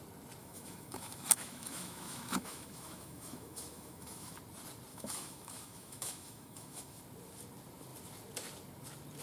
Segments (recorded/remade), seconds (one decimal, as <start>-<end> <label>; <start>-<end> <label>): 0.0-0.4 recorded; 0.4-4.4 remade; 4.4-4.9 recorded; 4.9-7.0 remade; 7.0-9.2 recorded